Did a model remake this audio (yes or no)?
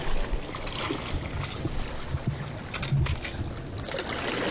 no